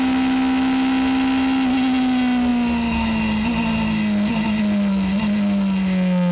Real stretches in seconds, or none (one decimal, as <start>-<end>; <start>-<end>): 0.0-6.3